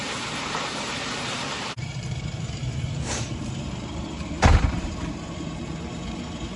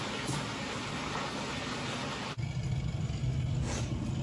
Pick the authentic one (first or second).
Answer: second